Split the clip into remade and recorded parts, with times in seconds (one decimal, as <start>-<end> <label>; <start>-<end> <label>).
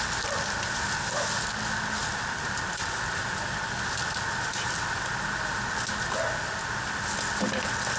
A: 0.0-8.0 recorded